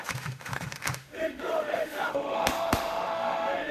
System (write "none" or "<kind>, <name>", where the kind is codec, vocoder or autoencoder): autoencoder, DAC-VAE